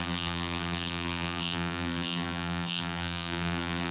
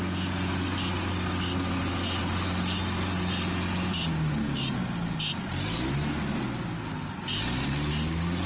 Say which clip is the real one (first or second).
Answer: second